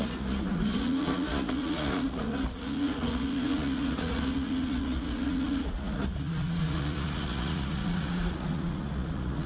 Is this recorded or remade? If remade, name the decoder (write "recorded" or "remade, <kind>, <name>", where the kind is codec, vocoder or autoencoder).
remade, vocoder, Vocos